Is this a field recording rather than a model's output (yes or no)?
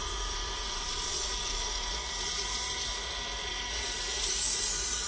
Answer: no